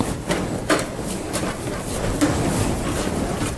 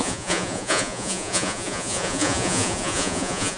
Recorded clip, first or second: first